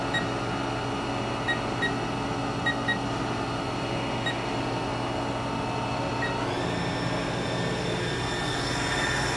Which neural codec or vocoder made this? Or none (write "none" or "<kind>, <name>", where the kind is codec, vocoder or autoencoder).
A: none